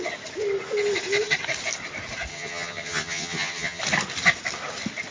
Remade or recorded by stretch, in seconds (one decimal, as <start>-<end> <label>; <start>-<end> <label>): 0.0-2.3 recorded; 2.3-3.8 remade; 3.8-5.1 recorded